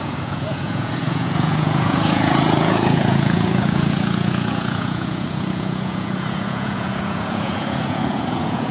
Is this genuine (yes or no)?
no